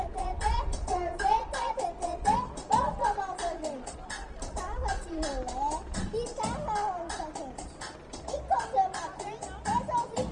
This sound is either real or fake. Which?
real